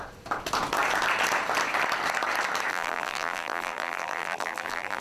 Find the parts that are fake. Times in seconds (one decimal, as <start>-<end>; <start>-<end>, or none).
2.7-5.0

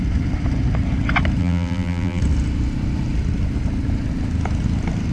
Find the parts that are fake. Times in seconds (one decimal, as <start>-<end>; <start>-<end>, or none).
1.4-2.2

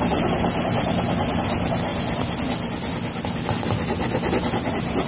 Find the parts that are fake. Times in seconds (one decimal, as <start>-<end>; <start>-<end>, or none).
none

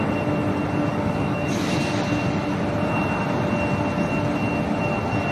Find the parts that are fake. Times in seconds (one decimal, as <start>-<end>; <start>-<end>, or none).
0.9-1.9

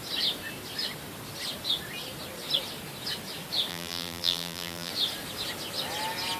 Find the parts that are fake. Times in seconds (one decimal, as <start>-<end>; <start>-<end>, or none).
3.7-4.9

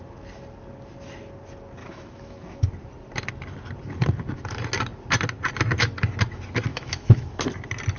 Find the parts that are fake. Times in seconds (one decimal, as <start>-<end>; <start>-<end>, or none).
1.8-2.6; 6.7-7.4

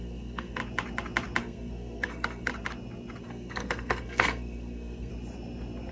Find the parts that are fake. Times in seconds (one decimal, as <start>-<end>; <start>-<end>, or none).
0.0-0.6; 1.4-2.5; 3.2-5.1

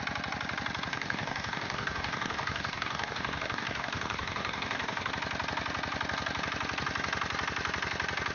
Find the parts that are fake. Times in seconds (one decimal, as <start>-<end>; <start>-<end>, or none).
0.9-5.1